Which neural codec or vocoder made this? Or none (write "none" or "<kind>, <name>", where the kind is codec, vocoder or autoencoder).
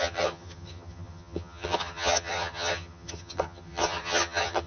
vocoder, HiFi-GAN